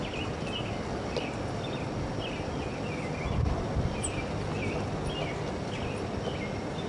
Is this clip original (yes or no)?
yes